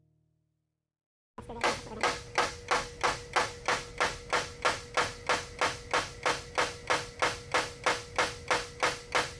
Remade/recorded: recorded